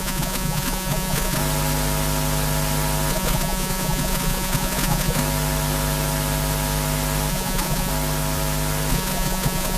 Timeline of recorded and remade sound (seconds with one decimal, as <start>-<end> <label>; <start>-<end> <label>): 0.0-1.4 remade; 1.4-3.1 recorded; 3.1-5.2 remade; 5.2-7.3 recorded; 7.3-7.9 remade; 7.9-8.9 recorded; 8.9-9.8 remade